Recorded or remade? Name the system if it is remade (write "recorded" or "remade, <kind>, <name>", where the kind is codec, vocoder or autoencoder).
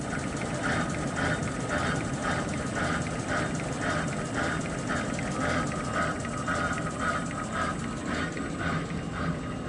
recorded